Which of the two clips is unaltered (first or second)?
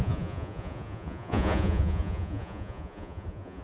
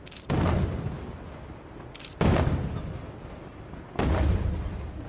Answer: second